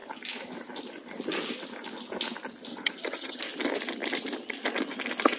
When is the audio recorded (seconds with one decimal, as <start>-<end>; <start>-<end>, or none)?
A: 0.0-2.7; 3.4-5.4